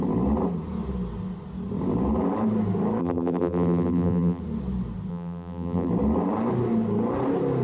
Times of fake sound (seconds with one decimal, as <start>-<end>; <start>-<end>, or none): 3.0-4.4; 5.1-5.9